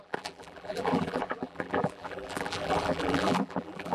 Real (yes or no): no